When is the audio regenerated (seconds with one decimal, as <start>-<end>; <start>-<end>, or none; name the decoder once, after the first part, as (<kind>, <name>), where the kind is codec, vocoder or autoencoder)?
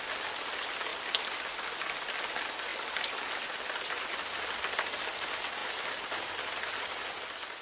5.6-7.0 (vocoder, BigVGAN v2)